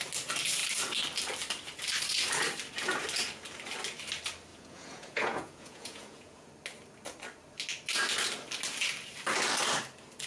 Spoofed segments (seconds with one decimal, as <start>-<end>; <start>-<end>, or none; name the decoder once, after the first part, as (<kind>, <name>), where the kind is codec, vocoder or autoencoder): 4.5-6.5 (vocoder, Vocos)